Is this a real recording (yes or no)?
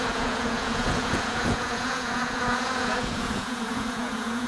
no